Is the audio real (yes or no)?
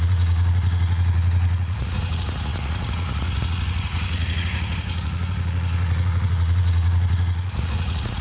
no